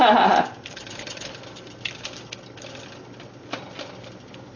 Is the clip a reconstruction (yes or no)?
no